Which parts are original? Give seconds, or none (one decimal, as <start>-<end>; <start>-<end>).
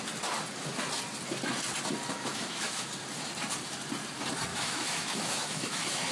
0.0-2.2; 2.9-4.5